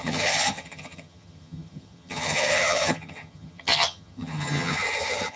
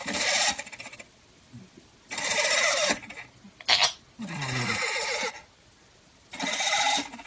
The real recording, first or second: second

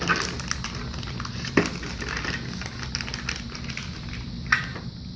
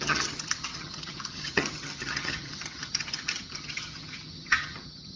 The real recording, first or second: first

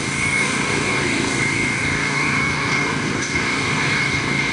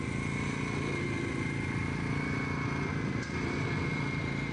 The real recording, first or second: second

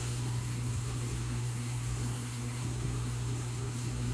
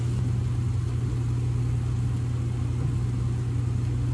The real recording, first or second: second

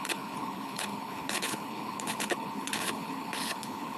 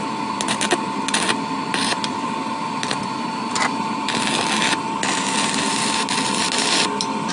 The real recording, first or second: second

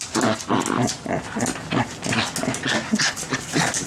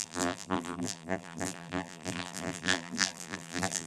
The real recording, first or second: first